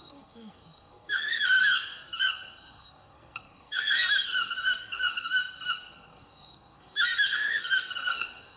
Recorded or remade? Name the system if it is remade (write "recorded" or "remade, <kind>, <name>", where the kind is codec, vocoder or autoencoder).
remade, codec, SNAC